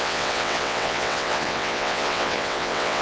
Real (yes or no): no